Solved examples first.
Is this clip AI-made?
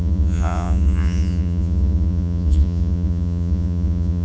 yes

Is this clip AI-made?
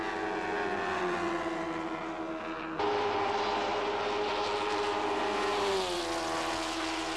no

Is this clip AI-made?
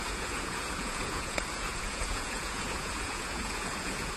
yes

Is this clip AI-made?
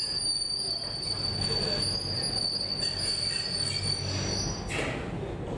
no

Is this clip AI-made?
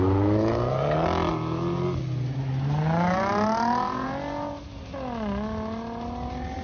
no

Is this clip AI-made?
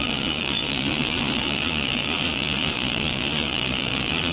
yes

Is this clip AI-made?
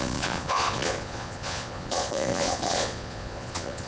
yes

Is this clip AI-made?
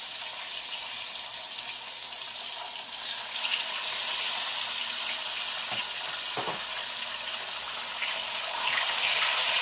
no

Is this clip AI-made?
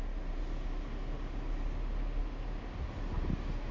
no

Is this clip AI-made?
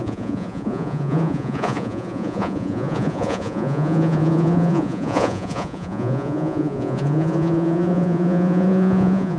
yes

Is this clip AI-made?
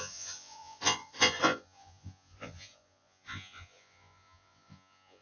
yes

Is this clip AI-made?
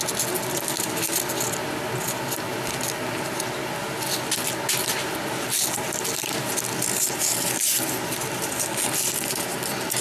no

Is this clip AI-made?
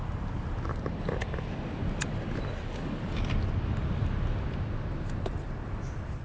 no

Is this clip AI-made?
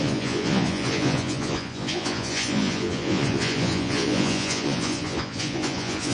yes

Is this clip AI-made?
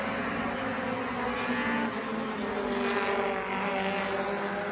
no